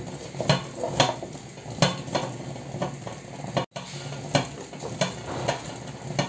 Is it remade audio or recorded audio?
recorded